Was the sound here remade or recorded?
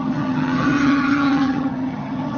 remade